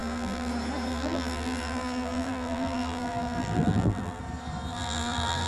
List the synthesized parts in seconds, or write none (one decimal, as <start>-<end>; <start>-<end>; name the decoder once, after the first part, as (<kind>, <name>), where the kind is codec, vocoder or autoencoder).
0.0-0.5 (vocoder, BigVGAN v2); 0.9-4.2; 4.7-5.5